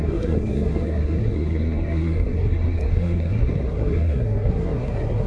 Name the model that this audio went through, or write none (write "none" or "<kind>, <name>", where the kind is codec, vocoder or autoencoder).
codec, SNAC